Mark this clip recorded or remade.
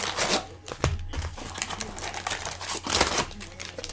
recorded